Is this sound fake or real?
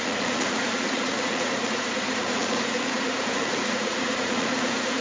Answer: fake